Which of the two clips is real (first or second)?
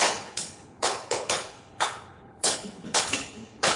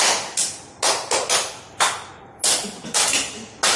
second